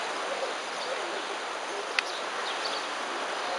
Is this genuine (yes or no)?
yes